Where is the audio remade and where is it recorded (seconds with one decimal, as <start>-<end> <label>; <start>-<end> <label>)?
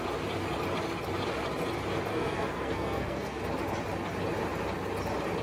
0.0-2.1 recorded; 2.1-3.4 remade; 3.4-5.4 recorded